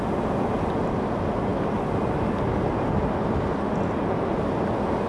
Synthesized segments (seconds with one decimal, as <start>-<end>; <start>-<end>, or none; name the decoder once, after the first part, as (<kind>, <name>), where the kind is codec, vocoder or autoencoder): none